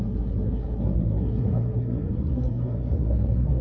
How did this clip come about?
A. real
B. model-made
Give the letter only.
B